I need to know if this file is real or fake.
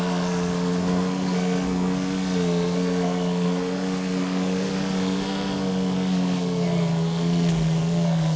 fake